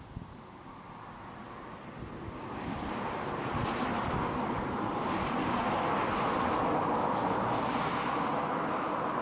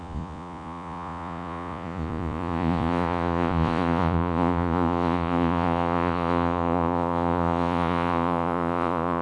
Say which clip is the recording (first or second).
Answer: first